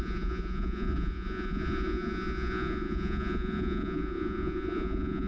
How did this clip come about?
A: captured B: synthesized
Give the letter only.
B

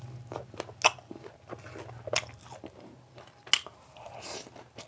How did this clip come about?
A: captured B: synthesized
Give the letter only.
A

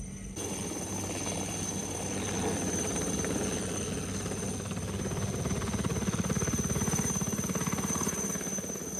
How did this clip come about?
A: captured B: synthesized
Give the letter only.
A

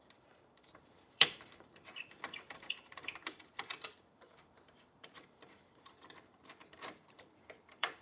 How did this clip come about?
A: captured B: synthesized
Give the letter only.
B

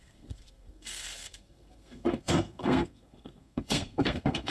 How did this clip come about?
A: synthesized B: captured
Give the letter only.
A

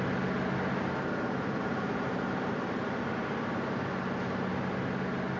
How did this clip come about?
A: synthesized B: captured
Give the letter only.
B